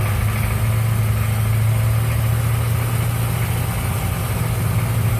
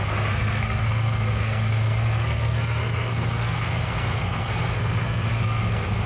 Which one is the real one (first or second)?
first